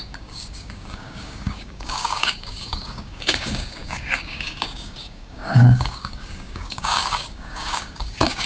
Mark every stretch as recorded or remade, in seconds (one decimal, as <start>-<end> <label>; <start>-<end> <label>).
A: 0.0-8.5 remade